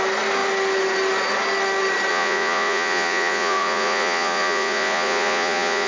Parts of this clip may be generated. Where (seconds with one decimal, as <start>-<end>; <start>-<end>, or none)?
2.1-5.9